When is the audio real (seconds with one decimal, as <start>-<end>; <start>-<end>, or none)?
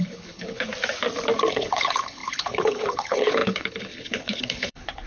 0.7-1.5